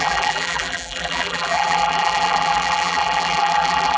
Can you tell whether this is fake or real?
fake